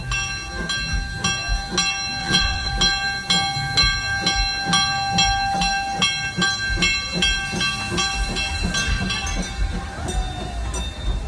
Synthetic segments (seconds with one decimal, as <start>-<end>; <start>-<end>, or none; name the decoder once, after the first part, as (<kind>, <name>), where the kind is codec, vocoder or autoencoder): 2.2-2.7 (vocoder, Vocos)